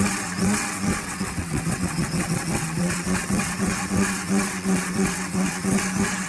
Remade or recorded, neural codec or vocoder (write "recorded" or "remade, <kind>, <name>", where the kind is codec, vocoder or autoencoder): remade, vocoder, WaveNeXt